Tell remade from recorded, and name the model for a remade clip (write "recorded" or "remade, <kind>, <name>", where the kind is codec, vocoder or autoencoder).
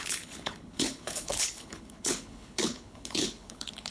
remade, codec, HILCodec